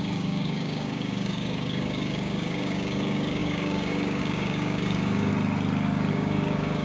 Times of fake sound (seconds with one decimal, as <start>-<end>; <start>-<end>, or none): 0.0-5.3; 6.1-6.8